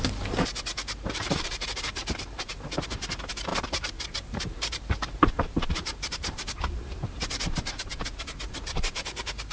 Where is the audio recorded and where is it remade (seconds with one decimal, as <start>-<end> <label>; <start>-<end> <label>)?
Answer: 0.0-9.5 remade